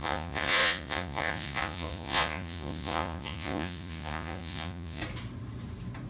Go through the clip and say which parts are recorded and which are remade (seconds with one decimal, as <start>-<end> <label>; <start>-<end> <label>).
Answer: 0.0-5.0 remade; 5.0-6.1 recorded